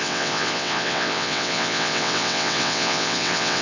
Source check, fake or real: fake